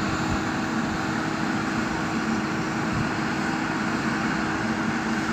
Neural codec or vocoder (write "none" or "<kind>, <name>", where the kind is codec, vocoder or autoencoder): none